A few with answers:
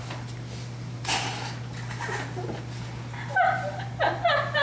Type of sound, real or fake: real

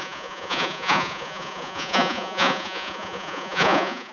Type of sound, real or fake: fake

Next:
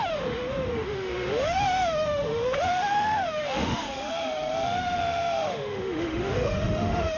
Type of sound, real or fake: fake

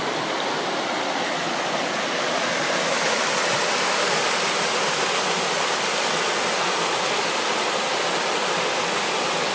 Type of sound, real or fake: real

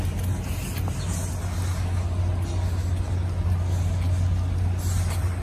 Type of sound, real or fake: real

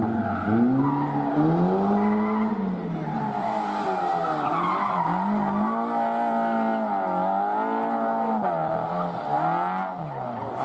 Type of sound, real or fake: real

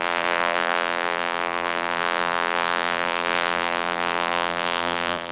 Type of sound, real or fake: fake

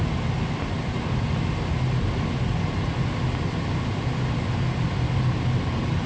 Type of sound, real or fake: real